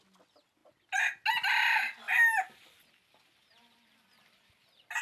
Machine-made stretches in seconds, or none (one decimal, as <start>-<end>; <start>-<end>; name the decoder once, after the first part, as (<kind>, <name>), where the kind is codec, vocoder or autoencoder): none